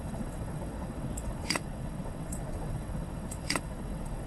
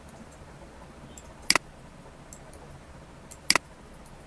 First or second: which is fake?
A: first